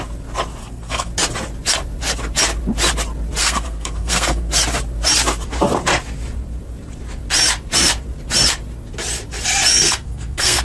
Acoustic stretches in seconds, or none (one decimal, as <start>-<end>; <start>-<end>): 0.0-0.6; 1.1-3.4; 4.5-9.7